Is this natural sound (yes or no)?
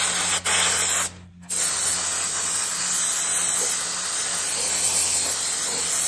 yes